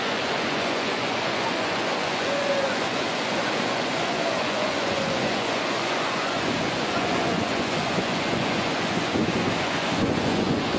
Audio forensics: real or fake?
fake